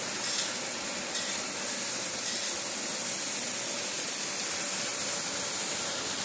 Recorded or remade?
recorded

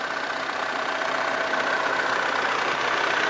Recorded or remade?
recorded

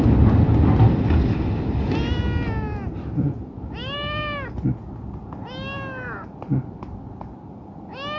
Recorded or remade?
recorded